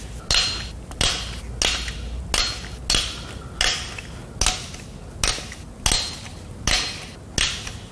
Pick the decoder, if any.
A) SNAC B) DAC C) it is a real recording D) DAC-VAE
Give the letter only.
C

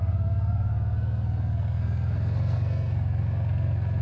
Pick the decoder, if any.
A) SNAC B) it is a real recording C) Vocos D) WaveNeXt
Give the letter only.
A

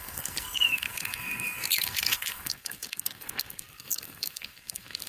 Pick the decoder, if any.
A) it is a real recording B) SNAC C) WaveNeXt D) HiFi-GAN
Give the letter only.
B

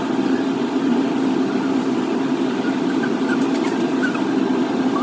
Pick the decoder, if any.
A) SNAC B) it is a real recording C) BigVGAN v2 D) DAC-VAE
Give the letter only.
B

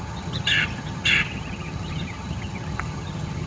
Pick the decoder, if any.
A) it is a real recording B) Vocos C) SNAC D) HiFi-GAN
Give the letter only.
D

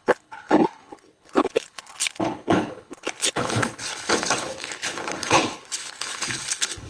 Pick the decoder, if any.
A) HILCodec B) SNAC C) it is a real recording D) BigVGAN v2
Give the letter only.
A